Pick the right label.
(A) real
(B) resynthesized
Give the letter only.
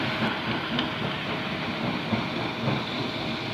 A